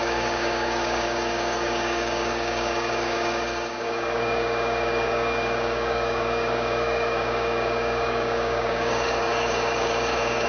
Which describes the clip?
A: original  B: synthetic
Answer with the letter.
B